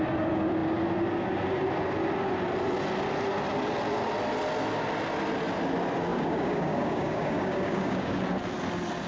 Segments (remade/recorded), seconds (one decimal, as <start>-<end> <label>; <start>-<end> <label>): 0.0-6.1 recorded; 6.1-8.2 remade; 8.2-9.1 recorded